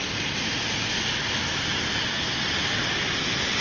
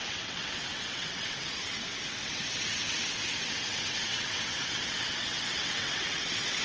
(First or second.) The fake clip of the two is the second